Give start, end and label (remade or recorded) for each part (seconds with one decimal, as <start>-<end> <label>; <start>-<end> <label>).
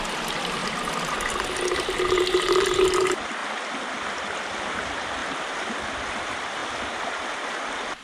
0.0-0.6 remade; 0.6-1.8 recorded; 1.8-3.4 remade; 3.4-4.0 recorded; 4.0-8.0 remade